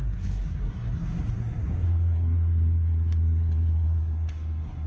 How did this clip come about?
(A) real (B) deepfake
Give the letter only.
B